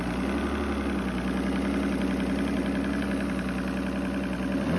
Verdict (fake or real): real